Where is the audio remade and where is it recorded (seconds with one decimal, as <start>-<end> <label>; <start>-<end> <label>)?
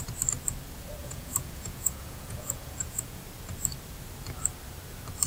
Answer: 0.0-1.0 recorded; 1.0-3.2 remade; 3.2-5.3 recorded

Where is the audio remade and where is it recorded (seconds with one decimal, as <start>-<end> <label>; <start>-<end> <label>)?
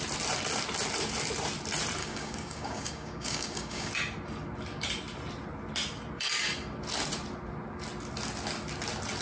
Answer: 0.0-2.0 recorded; 2.0-3.9 remade; 3.9-9.2 recorded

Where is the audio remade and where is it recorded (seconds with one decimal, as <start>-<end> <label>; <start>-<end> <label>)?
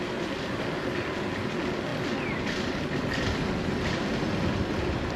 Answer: 0.0-5.2 recorded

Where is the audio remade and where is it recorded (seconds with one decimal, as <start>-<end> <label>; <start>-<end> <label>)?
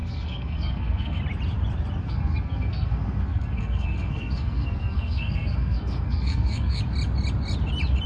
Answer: 0.0-1.2 remade; 1.2-2.0 recorded; 2.0-6.8 remade; 6.8-8.1 recorded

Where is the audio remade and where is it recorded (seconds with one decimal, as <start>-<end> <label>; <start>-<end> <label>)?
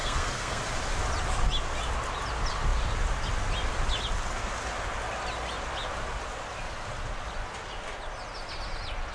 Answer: 0.0-0.6 remade; 0.6-9.1 recorded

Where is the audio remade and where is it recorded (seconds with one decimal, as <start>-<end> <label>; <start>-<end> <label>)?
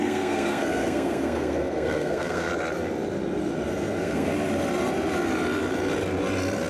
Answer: 0.0-2.5 remade; 2.5-3.7 recorded; 3.7-4.3 remade; 4.3-6.7 recorded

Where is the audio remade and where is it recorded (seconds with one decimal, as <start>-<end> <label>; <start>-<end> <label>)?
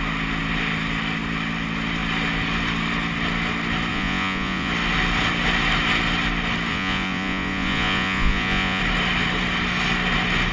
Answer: 0.0-3.9 recorded; 3.9-4.7 remade; 4.7-6.7 recorded; 6.7-8.8 remade; 8.8-10.5 recorded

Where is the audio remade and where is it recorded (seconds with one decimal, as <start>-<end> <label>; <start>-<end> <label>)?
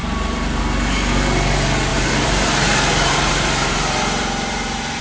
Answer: 0.0-0.6 remade; 0.6-1.9 recorded; 1.9-5.0 remade